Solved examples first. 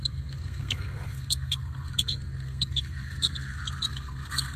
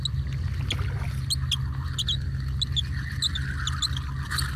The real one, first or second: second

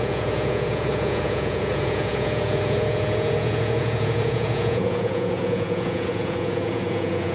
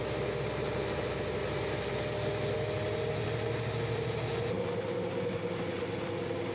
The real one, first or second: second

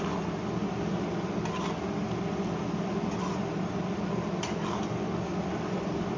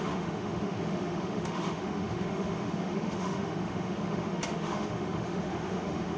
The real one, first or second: first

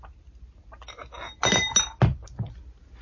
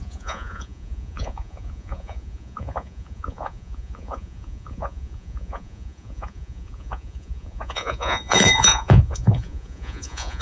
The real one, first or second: first